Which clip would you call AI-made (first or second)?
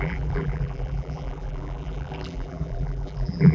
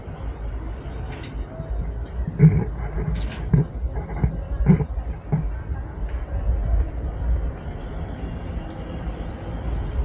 first